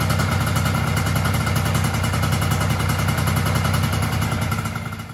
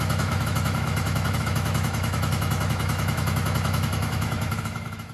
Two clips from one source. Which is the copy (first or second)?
second